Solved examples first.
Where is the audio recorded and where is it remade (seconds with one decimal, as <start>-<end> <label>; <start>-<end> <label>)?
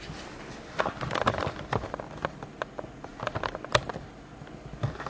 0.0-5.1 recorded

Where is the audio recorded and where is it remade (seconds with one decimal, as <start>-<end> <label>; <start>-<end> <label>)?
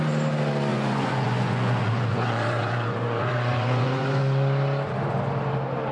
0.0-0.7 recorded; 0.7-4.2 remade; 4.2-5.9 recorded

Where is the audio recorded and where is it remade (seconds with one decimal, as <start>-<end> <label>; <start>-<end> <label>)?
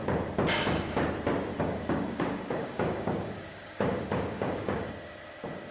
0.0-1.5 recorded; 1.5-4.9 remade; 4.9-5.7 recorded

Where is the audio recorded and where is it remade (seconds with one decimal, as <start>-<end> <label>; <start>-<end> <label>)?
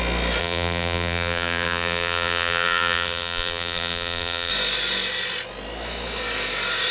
0.0-0.4 recorded; 0.4-4.5 remade; 4.5-6.9 recorded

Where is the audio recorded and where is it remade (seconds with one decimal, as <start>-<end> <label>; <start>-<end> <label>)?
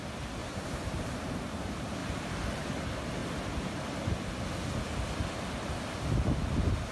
0.0-0.4 recorded; 0.4-1.6 remade; 1.6-2.0 recorded; 2.0-2.6 remade; 2.6-6.9 recorded